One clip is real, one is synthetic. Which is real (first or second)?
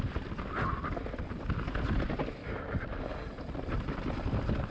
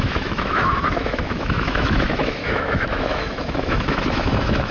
first